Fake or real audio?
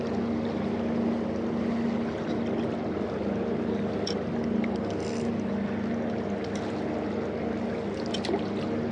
real